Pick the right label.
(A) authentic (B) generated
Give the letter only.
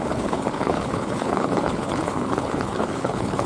B